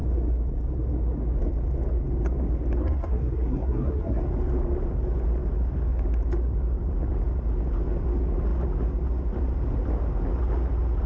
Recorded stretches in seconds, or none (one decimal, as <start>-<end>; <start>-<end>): 0.0-2.8; 4.2-11.1